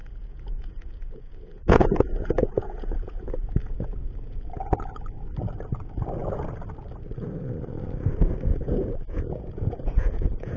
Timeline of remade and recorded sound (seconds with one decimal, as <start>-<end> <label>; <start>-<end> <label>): 0.0-4.4 remade; 4.4-8.5 recorded; 8.5-10.6 remade